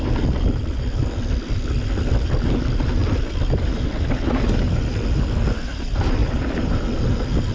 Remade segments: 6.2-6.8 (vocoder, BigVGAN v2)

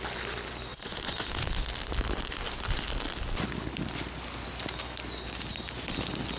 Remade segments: 0.7-1.3 (vocoder, Vocos)